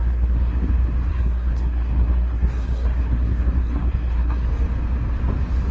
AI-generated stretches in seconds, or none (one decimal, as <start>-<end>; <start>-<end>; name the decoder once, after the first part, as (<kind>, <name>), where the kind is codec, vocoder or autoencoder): 0.0-0.7 (codec, SNAC); 1.1-4.5